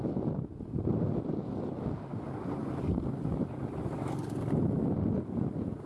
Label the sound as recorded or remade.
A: recorded